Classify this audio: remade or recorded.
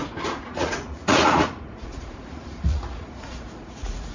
remade